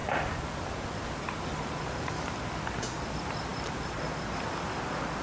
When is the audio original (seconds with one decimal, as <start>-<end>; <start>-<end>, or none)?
0.0-5.2